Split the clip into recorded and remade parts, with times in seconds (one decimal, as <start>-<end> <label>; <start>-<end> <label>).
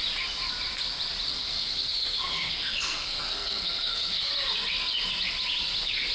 0.0-1.3 recorded; 1.3-4.3 remade; 4.3-6.1 recorded